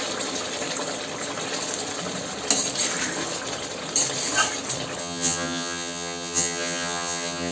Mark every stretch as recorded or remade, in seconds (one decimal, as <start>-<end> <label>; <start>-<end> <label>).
0.0-5.0 recorded; 5.0-7.5 remade